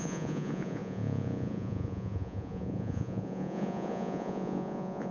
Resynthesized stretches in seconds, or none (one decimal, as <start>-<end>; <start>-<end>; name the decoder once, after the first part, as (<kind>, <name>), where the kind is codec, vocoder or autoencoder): 0.0-5.1 (vocoder, Vocos)